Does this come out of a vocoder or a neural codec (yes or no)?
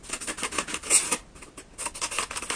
no